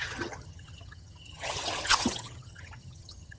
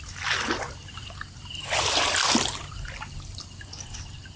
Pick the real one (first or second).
second